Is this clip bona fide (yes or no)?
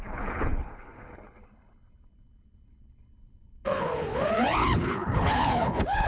no